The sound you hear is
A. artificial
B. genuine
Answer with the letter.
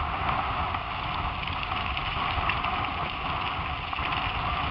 B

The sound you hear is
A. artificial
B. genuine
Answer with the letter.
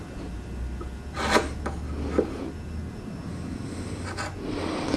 B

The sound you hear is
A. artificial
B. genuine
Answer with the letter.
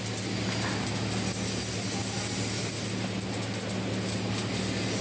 B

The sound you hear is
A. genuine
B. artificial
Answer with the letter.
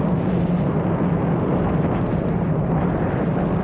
A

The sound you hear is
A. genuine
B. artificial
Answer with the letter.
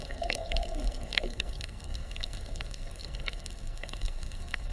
B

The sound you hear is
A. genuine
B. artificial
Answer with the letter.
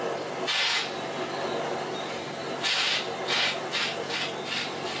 A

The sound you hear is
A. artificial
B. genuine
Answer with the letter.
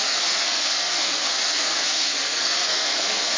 A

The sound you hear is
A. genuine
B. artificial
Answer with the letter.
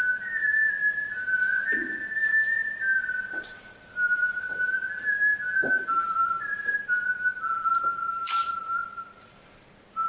A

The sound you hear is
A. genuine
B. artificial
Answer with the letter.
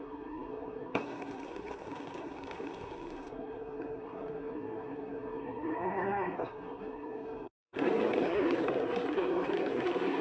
B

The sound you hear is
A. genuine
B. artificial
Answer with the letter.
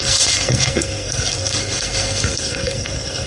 B